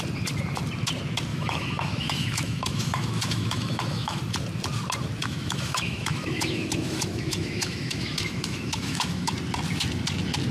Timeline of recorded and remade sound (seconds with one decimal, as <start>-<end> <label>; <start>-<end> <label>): 0.0-1.3 recorded; 1.3-4.2 remade; 4.2-5.2 recorded; 5.2-9.3 remade; 9.3-10.5 recorded